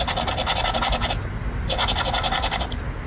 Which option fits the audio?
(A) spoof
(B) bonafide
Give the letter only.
B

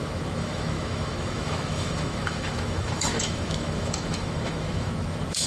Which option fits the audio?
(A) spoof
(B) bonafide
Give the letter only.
A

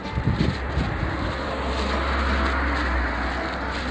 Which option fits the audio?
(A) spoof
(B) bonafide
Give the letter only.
B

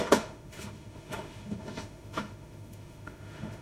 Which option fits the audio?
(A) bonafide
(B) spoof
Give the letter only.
B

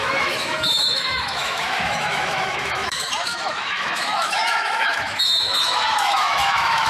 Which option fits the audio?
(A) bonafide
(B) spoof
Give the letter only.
B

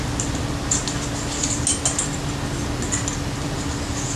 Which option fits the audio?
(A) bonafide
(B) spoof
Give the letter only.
A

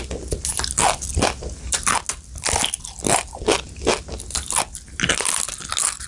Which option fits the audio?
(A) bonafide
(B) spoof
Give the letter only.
A